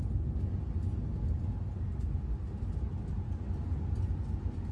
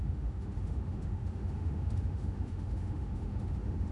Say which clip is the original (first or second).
first